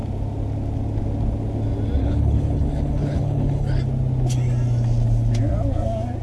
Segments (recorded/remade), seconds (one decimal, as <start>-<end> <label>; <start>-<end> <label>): 0.0-2.0 recorded; 2.0-3.8 remade; 3.8-6.2 recorded